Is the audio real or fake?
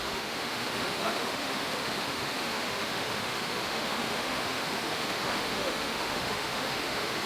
fake